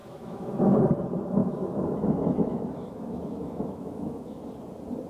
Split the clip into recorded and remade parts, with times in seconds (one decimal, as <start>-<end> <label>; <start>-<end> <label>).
0.0-0.8 remade; 0.8-1.4 recorded; 1.4-4.5 remade; 4.5-5.1 recorded

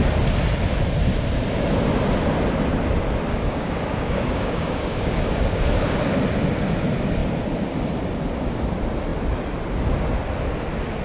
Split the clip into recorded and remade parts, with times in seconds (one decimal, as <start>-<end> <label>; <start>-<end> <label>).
0.0-3.3 recorded; 3.3-6.0 remade; 6.0-11.0 recorded

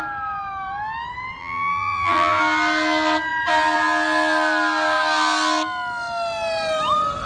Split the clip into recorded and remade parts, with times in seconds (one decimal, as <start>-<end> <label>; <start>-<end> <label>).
0.0-1.4 recorded; 1.4-2.4 remade; 2.4-7.3 recorded

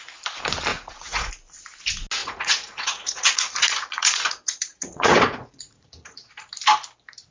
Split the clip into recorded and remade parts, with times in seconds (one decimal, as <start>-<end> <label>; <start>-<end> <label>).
0.0-0.7 recorded; 0.7-1.3 remade; 1.3-2.2 recorded; 2.2-6.3 remade; 6.3-7.3 recorded

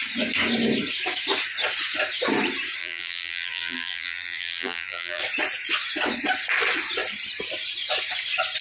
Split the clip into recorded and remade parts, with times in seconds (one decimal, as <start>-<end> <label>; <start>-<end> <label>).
0.0-2.8 recorded; 2.8-5.2 remade; 5.2-8.6 recorded

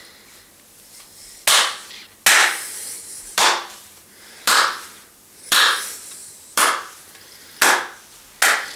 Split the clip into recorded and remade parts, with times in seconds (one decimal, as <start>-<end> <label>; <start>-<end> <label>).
0.0-2.4 recorded; 2.4-5.8 remade; 5.8-6.2 recorded; 6.2-7.6 remade; 7.6-8.8 recorded

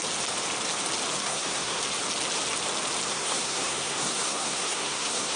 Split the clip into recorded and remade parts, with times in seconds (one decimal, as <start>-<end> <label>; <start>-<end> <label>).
0.0-1.2 recorded; 1.2-1.8 remade; 1.8-3.1 recorded; 3.1-5.4 remade